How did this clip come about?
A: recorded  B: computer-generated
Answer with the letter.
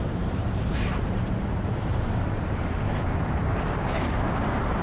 B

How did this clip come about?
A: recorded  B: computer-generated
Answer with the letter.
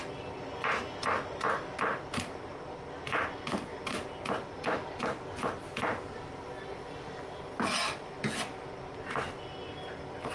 A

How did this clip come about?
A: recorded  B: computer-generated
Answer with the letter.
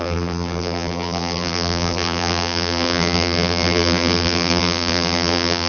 B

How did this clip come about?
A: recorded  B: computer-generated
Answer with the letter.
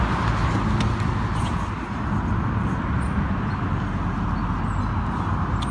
A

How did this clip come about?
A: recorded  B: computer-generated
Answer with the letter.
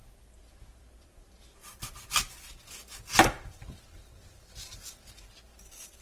B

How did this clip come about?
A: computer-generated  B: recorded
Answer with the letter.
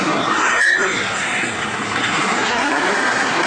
A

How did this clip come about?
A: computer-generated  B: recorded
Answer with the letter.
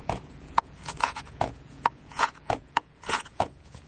A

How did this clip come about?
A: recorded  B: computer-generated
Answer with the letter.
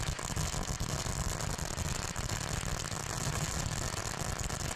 A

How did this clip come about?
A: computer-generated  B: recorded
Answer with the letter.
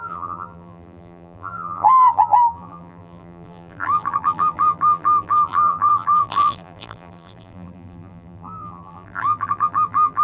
A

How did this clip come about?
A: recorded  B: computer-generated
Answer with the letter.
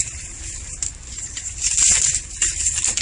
B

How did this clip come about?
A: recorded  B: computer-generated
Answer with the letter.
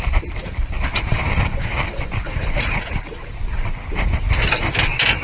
A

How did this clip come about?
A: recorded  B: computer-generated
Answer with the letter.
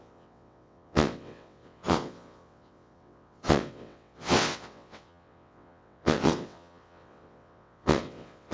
B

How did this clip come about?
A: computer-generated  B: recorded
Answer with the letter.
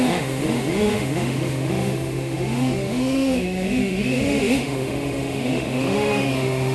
A